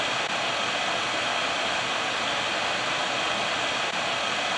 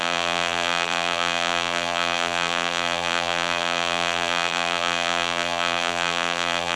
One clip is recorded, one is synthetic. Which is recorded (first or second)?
first